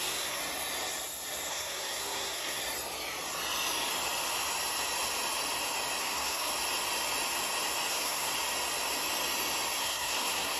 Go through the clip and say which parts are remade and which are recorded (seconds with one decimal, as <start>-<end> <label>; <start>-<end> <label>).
0.0-0.4 remade; 0.4-1.5 recorded; 1.5-2.6 remade; 2.6-6.0 recorded; 6.0-6.5 remade; 6.5-7.9 recorded; 7.9-8.3 remade; 8.3-9.8 recorded; 9.8-10.6 remade